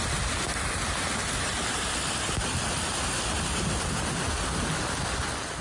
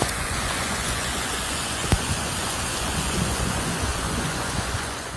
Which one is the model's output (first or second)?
second